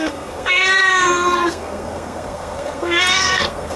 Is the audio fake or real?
fake